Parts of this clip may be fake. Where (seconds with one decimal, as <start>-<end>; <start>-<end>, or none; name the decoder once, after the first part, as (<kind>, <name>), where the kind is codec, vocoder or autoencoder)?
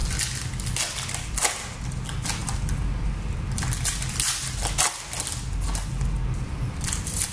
none